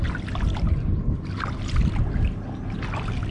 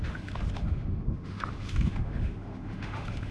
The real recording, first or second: first